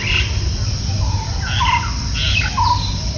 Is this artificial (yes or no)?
no